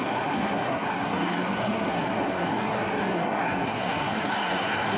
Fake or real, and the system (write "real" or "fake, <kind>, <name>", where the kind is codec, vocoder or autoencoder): fake, codec, SNAC